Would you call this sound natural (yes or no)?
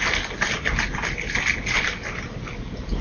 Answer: yes